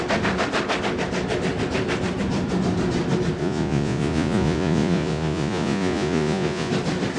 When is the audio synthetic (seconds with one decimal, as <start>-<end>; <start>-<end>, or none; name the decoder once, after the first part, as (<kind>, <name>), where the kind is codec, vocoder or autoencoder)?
3.4-6.7 (vocoder, Vocos)